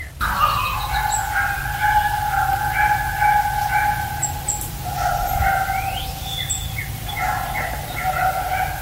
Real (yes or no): yes